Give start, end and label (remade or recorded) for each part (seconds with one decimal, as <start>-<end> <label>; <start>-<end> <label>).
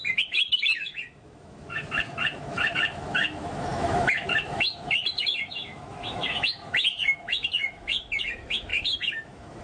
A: 0.0-9.6 remade